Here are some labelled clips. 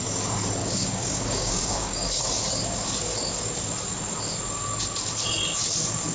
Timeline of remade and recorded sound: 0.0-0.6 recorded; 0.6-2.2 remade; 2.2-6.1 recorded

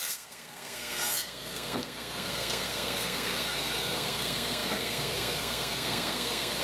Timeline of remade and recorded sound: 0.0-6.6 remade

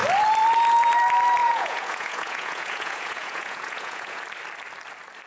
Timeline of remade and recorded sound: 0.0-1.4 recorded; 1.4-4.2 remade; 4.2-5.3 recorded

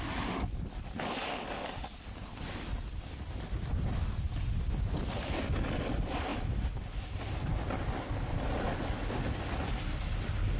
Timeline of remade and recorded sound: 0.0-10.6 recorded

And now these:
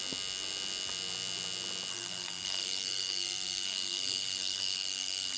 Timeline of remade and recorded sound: 0.0-1.9 recorded; 1.9-5.4 remade

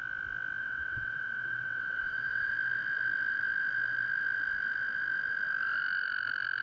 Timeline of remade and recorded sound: 0.0-0.6 recorded; 0.6-2.5 remade; 2.5-6.6 recorded